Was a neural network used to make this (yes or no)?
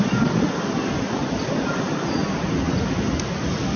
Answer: no